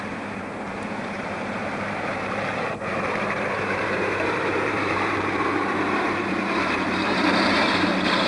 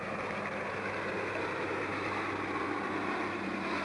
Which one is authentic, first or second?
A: second